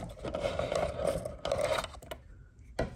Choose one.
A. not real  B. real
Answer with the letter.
B